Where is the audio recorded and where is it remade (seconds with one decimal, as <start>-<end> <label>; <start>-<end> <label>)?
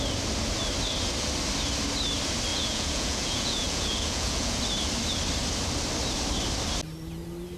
0.0-2.5 recorded; 2.5-4.6 remade; 4.6-7.6 recorded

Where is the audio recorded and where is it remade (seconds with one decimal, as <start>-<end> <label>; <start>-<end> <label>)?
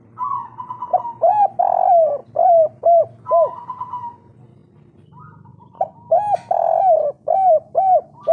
0.0-8.3 recorded